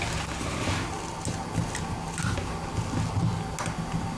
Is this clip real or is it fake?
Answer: real